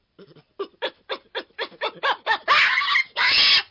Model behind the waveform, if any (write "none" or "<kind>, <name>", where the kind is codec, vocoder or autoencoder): none